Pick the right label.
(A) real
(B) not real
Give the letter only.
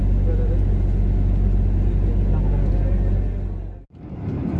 A